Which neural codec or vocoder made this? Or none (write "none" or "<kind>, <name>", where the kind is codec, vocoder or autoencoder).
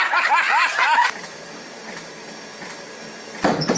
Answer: none